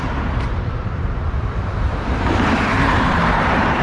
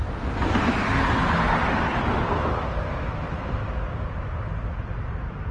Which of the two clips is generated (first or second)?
first